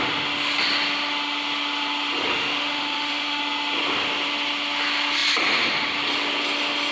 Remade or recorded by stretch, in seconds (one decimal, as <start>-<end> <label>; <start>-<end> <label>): 0.0-2.3 recorded; 2.3-3.4 remade; 3.4-6.9 recorded